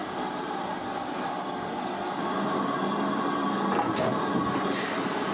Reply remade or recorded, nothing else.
recorded